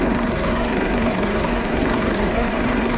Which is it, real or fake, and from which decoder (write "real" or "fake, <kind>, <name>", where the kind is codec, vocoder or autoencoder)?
fake, codec, SNAC